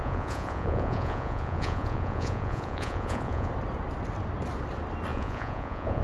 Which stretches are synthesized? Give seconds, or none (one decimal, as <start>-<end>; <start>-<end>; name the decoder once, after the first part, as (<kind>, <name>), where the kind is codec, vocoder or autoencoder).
0.0-3.5 (vocoder, Vocos); 5.1-6.0